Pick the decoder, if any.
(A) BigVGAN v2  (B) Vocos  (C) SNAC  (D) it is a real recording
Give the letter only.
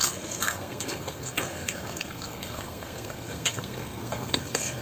C